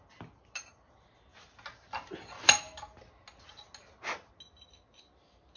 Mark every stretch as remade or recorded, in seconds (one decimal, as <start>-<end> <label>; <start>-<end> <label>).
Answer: 0.0-5.6 recorded